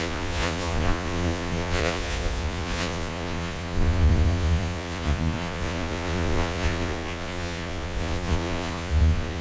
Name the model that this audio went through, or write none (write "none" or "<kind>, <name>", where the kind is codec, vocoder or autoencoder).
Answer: vocoder, Vocos